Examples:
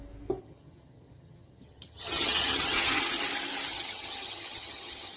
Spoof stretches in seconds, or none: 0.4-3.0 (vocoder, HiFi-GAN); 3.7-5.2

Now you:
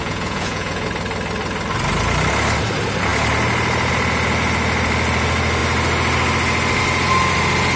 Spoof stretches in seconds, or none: 0.0-0.9 (vocoder, Vocos)

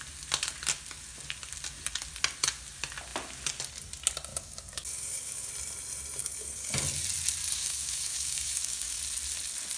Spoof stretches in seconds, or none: 4.3-5.5 (codec, DAC); 6.2-6.7; 7.4-9.0

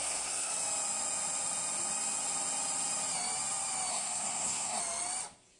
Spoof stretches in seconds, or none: 0.0-0.5 (codec, SNAC); 3.9-4.8

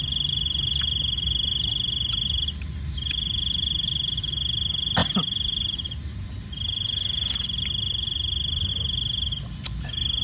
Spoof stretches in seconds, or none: none

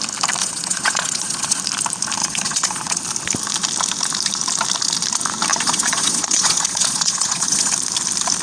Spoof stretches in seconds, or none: 0.4-1.6 (vocoder, Vocos); 2.2-3.0; 5.5-7.7

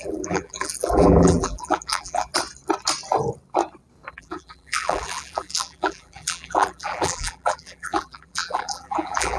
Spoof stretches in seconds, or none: 0.0-2.3 (vocoder, BigVGAN v2); 4.1-9.4